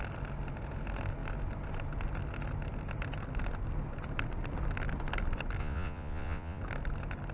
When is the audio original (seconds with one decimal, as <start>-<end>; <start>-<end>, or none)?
0.0-5.6; 6.6-7.3